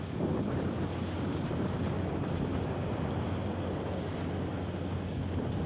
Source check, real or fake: real